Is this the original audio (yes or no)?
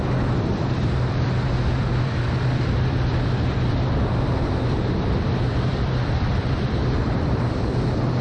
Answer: no